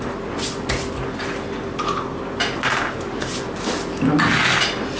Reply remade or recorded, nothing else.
recorded